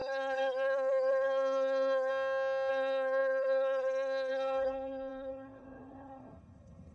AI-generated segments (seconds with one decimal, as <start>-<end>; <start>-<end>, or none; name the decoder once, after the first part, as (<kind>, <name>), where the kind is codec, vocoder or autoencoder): 0.0-2.1 (codec, SNAC); 2.7-6.9